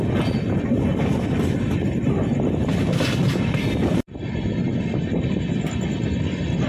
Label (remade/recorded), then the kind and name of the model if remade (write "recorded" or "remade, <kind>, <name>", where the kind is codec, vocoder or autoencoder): recorded